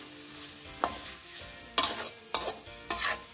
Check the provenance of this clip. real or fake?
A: real